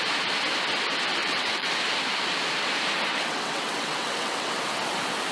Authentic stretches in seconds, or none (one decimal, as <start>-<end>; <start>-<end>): 0.0-1.2; 1.7-3.1; 4.6-5.3